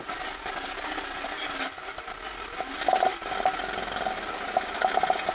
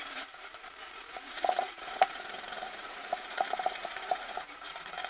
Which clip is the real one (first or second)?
first